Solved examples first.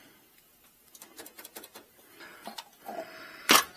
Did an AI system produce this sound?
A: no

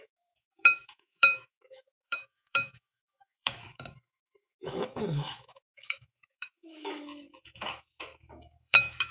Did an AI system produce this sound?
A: yes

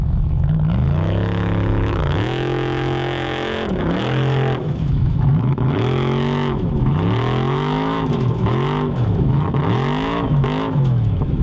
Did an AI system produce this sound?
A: yes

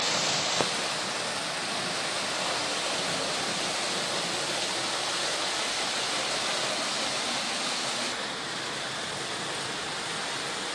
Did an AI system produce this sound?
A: no